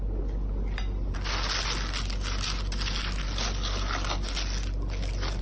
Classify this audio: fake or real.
real